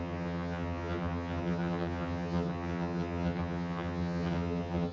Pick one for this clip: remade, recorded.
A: remade